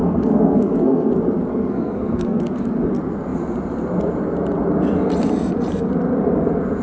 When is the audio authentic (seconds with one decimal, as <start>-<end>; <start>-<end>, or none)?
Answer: 1.1-1.5; 2.4-6.8